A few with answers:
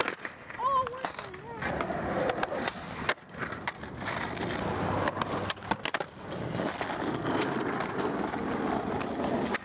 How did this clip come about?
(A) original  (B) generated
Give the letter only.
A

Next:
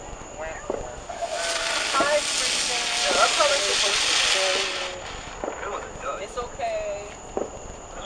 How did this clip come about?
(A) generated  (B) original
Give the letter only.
B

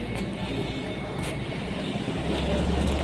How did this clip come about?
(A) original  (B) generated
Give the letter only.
A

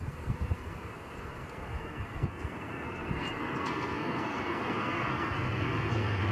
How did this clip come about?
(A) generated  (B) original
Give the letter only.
A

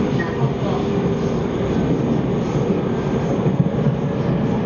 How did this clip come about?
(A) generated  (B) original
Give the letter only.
B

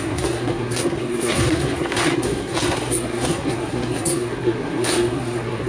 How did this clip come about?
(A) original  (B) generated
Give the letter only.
B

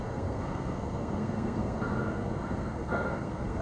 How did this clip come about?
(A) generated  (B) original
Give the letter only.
A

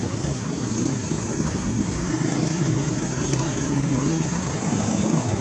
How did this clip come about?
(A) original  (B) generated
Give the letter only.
B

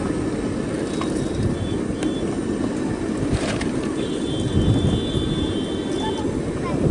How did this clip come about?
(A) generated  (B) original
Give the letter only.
B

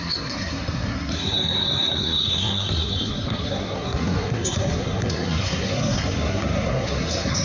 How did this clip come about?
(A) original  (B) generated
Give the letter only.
B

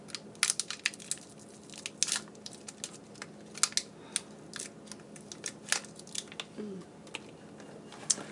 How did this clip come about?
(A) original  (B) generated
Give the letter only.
A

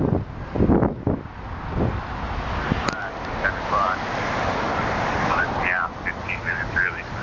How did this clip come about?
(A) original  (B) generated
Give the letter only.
A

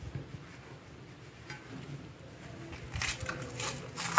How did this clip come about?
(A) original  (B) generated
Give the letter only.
A